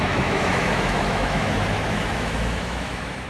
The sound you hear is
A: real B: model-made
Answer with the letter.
B